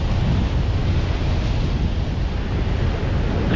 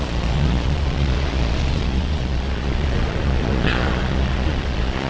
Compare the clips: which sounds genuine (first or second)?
first